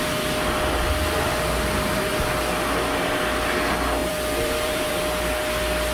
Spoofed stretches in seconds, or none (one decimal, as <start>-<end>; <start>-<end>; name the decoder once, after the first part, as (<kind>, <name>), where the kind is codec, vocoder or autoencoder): 4.0-4.9 (vocoder, BigVGAN v2)